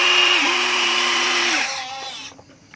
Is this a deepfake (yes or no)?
yes